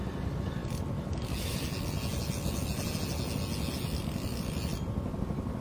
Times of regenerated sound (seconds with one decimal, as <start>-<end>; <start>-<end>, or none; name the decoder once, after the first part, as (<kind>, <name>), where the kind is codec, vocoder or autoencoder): none